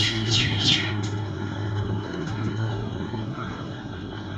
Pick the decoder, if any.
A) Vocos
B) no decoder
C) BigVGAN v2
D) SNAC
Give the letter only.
D